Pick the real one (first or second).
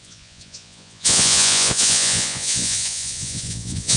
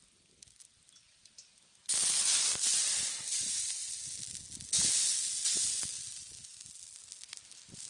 second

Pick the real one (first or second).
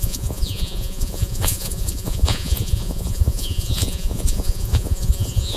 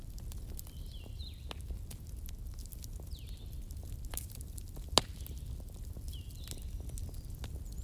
second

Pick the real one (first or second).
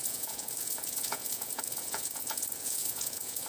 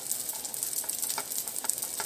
second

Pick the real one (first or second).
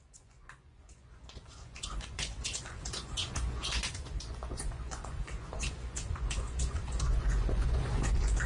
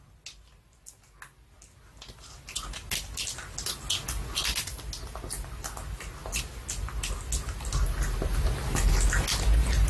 second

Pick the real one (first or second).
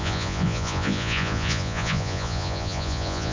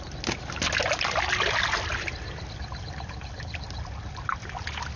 second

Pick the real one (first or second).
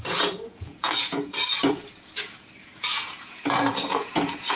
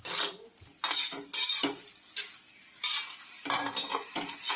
second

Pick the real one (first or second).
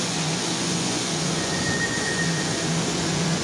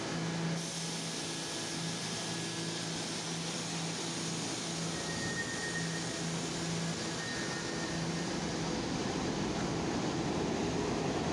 second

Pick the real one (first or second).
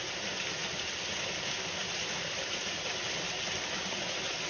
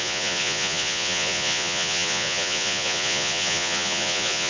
first